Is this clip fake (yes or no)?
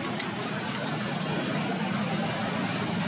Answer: no